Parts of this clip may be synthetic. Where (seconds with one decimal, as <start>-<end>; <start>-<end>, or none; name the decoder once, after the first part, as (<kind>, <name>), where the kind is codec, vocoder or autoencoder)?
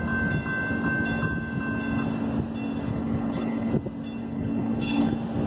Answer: 2.9-3.7 (codec, HILCodec); 4.2-5.1